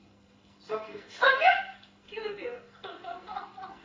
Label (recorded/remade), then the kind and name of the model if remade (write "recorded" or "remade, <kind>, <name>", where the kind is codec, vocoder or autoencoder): remade, codec, SNAC